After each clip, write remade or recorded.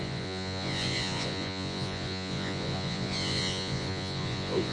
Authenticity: remade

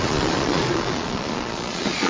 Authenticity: remade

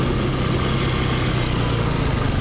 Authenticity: recorded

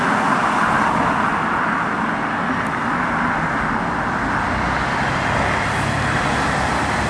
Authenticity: recorded